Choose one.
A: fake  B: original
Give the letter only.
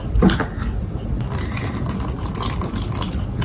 B